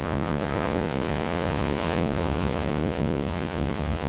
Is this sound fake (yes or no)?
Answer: yes